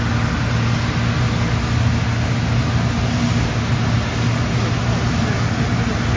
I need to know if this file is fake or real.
real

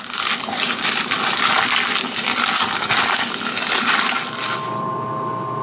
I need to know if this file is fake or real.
real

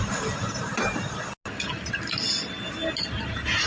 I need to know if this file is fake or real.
real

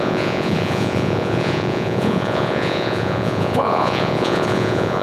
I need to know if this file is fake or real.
fake